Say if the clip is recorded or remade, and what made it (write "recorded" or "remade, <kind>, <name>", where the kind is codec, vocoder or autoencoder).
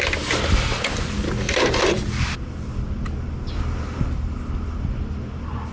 recorded